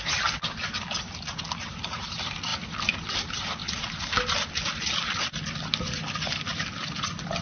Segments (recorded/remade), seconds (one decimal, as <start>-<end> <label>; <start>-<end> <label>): 0.0-7.4 recorded